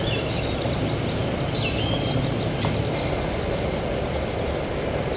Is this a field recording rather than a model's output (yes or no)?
yes